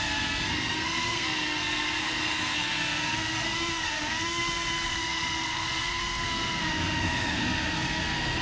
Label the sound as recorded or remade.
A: remade